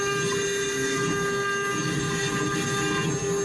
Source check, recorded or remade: recorded